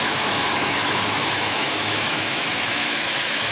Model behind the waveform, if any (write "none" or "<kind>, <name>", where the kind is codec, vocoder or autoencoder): autoencoder, DAC-VAE